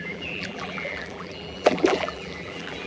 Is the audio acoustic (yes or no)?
no